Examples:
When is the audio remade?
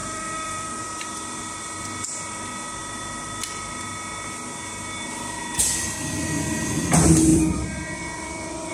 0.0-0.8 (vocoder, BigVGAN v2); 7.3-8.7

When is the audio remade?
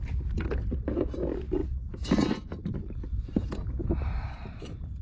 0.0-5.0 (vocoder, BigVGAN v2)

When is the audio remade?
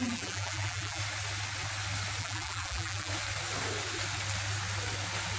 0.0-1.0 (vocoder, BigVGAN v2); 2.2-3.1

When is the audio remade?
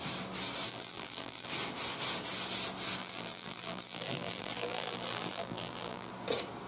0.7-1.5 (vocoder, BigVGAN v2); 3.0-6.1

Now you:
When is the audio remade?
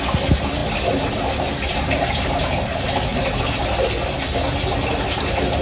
1.7-2.7 (vocoder, BigVGAN v2); 3.1-3.6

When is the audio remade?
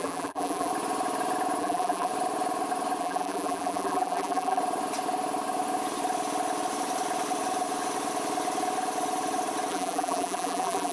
0.0-0.7 (vocoder, BigVGAN v2); 1.6-2.1; 3.0-4.6; 9.7-10.9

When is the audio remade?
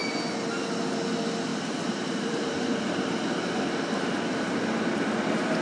1.5-3.1 (vocoder, BigVGAN v2)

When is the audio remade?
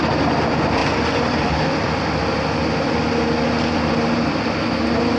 0.8-3.9 (vocoder, BigVGAN v2)